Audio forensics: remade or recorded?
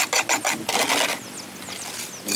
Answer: recorded